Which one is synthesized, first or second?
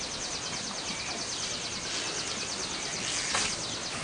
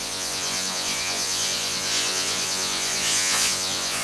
second